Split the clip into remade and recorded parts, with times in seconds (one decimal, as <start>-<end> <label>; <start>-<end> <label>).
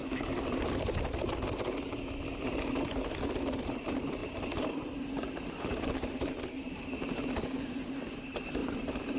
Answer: 0.0-3.7 recorded; 3.7-9.2 remade